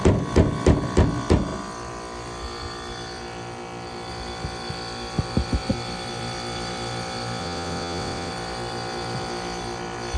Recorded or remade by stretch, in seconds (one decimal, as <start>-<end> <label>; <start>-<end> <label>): 0.0-7.4 recorded; 7.4-8.3 remade; 8.3-10.2 recorded

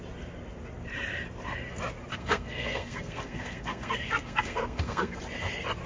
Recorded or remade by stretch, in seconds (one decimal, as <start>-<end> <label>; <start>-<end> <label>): 0.0-2.1 recorded; 2.1-5.2 remade; 5.2-5.9 recorded

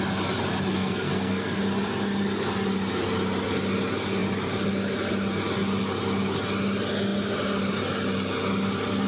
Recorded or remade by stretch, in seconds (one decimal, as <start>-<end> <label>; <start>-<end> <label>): 0.0-0.7 recorded; 0.7-1.6 remade; 1.6-9.1 recorded

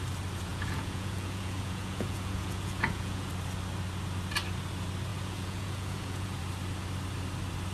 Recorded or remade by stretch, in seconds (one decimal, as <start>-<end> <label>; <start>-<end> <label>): 0.0-0.5 recorded; 0.5-3.3 remade; 3.3-5.1 recorded; 5.1-6.4 remade; 6.4-7.7 recorded

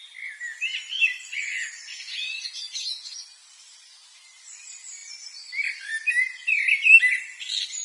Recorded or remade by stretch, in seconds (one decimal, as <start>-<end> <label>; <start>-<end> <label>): 0.0-1.9 recorded; 1.9-3.2 remade; 3.2-7.8 recorded